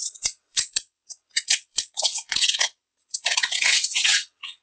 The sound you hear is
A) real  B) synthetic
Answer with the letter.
B